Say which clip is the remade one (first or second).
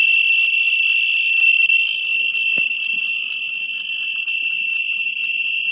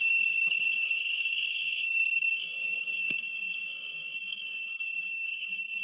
second